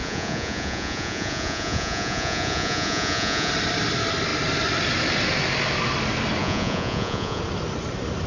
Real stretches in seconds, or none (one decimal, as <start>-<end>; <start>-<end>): 3.5-6.4; 7.4-8.3